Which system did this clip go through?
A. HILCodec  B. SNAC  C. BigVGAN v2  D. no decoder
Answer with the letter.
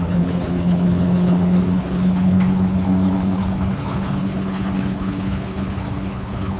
A